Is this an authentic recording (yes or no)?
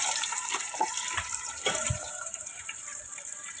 no